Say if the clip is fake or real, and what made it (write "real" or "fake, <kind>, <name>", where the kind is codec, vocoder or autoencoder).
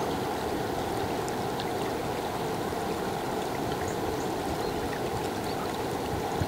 real